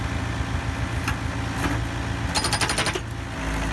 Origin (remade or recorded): recorded